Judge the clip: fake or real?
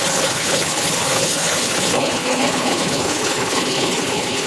fake